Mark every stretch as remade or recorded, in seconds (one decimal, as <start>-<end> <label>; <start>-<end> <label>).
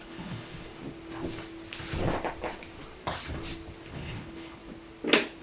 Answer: 0.0-0.7 remade; 0.7-3.9 recorded; 3.9-4.6 remade; 4.6-5.4 recorded